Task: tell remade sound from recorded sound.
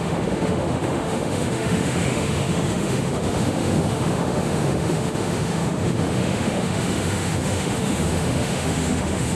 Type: remade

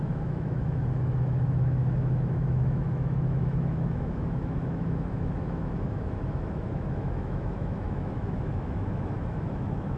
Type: remade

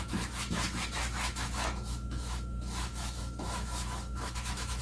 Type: remade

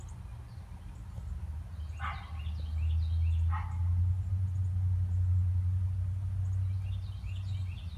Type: recorded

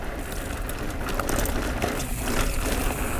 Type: recorded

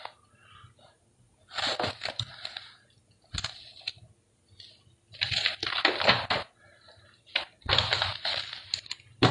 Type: recorded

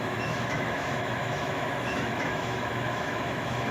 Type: remade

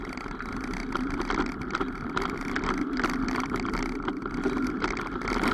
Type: recorded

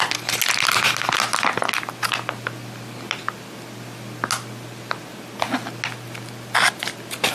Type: recorded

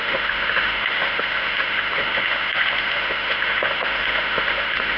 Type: remade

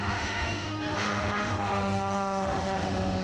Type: remade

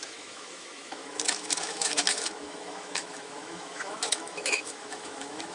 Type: remade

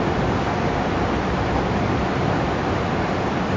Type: recorded